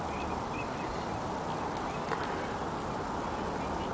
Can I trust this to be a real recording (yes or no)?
yes